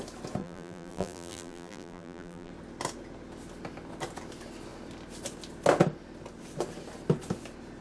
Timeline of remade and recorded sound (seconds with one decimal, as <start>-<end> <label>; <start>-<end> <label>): 0.0-0.4 recorded; 0.4-2.5 remade; 2.5-7.8 recorded